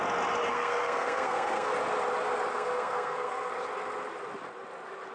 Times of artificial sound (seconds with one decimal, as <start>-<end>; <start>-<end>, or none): 0.5-1.7; 2.5-3.5